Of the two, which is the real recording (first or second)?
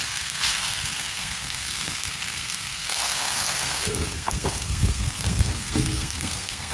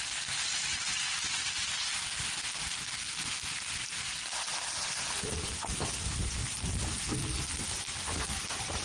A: second